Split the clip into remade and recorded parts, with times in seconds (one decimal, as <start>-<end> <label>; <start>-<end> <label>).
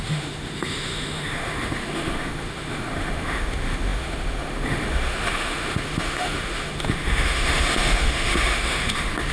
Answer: 0.0-9.3 remade